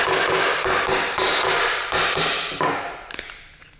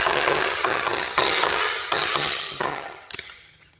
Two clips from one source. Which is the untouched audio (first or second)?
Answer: first